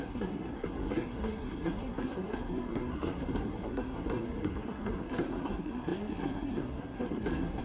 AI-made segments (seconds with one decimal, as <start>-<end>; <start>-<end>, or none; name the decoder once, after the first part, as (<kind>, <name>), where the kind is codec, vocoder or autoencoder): 0.0-7.6 (codec, SNAC)